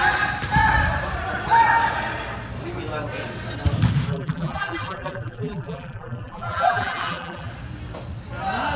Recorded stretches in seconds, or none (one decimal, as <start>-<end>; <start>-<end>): 0.0-4.1; 7.5-8.8